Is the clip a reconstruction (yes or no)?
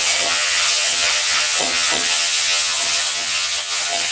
yes